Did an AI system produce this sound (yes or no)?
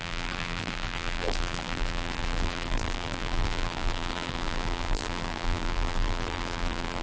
yes